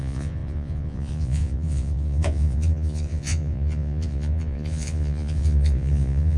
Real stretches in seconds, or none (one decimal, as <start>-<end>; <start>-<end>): none

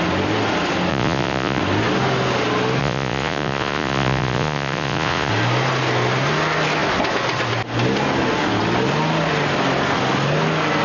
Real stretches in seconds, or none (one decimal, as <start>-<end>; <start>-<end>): 0.0-0.9; 1.6-2.8; 5.3-10.8

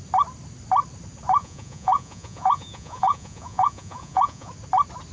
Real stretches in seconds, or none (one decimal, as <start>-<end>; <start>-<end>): 0.0-1.4; 4.5-5.1

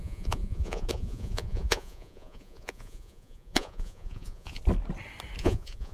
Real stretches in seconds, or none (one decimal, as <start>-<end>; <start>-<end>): 4.6-5.4

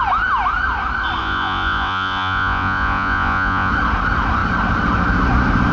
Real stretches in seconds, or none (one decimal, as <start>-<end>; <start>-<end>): 0.0-1.2; 3.7-5.7

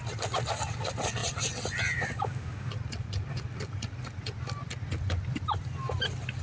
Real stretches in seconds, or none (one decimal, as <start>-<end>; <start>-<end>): 0.0-6.4

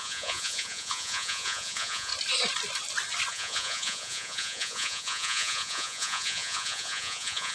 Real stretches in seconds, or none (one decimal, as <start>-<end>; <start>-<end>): 2.1-3.3